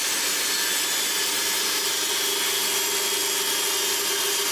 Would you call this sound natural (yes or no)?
yes